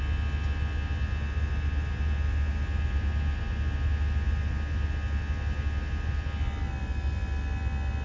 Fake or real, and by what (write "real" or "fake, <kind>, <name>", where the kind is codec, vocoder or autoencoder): real